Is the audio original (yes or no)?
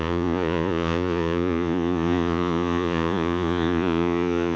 no